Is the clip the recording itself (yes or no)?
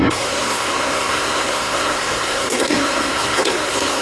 no